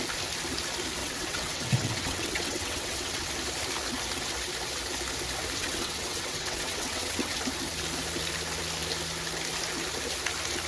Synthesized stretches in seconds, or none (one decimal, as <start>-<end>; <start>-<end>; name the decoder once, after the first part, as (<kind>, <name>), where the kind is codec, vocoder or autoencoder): 1.0-3.3 (vocoder, WaveNeXt); 5.6-7.4